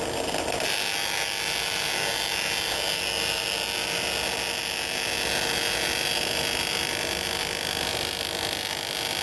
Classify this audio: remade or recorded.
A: recorded